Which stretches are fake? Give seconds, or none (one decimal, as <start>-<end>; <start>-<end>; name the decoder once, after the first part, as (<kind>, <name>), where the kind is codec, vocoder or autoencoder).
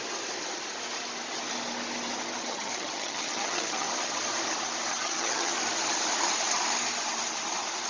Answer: 2.4-3.9 (vocoder, HiFi-GAN); 4.9-5.5